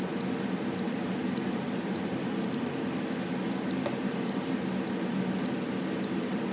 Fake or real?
real